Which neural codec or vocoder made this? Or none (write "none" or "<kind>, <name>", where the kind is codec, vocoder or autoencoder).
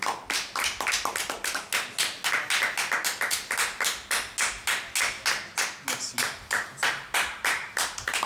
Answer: none